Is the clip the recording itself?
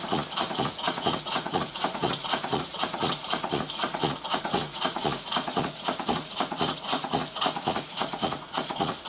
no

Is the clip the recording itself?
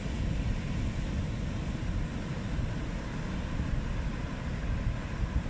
yes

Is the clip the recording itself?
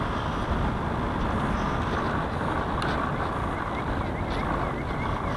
yes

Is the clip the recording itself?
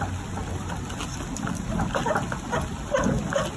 yes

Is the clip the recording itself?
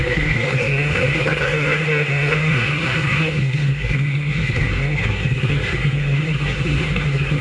no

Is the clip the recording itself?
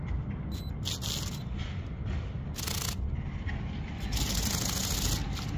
yes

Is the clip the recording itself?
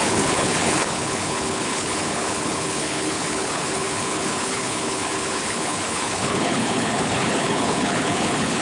no